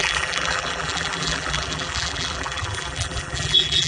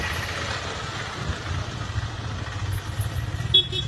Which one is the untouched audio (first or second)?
second